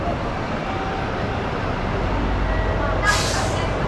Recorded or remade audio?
recorded